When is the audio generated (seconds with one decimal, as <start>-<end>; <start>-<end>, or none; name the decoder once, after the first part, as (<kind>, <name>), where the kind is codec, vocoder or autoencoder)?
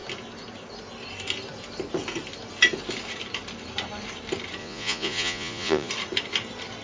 4.6-5.9 (vocoder, Vocos)